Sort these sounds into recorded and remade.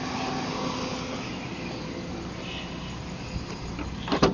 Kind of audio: recorded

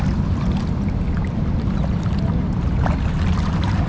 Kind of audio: recorded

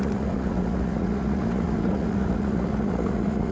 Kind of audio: remade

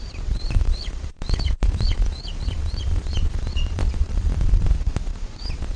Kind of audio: remade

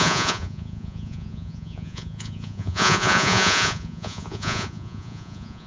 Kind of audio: remade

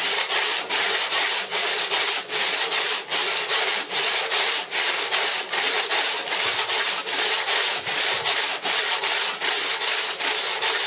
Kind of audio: recorded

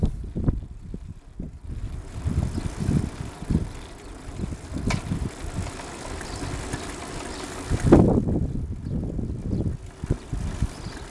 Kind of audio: recorded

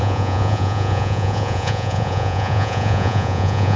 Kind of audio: remade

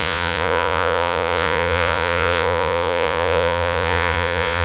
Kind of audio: remade